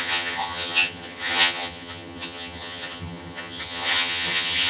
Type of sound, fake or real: fake